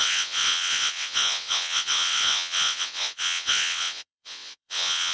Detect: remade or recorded remade